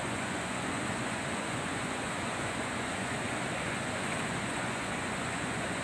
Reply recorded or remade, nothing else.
remade